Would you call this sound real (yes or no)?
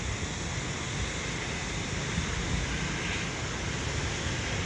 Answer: yes